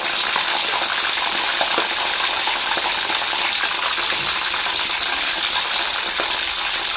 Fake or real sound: real